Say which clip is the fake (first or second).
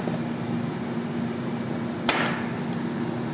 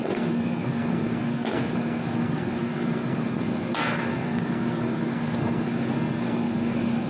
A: second